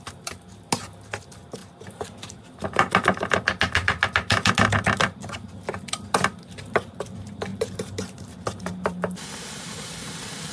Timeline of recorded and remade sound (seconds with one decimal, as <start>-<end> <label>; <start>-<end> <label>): 0.0-7.5 recorded; 7.5-9.9 remade; 9.9-10.5 recorded